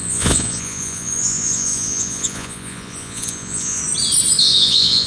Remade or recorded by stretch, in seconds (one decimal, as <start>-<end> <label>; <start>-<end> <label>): 0.0-3.8 remade; 3.8-4.4 recorded; 4.4-5.1 remade